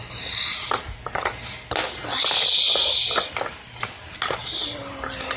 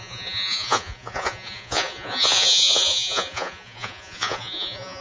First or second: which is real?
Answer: first